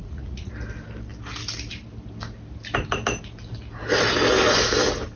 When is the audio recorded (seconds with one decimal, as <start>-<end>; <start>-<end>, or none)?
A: 0.5-5.2